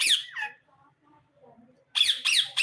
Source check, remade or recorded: recorded